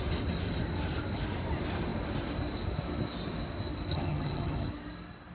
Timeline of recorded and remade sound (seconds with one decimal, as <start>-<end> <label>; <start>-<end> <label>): 0.0-3.9 recorded; 3.9-4.7 remade; 4.7-5.3 recorded